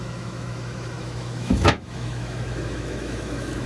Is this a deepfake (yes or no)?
yes